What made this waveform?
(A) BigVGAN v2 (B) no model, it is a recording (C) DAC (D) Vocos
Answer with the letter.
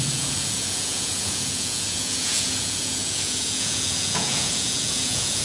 D